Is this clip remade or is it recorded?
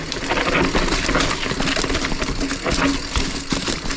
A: recorded